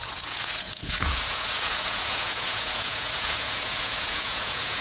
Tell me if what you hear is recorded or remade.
remade